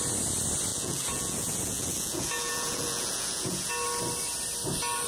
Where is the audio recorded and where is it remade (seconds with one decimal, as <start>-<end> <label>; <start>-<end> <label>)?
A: 0.0-0.7 recorded; 0.7-3.7 remade; 3.7-5.1 recorded